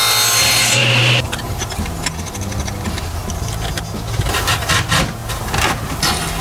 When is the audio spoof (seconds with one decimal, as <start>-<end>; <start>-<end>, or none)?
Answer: 0.8-2.1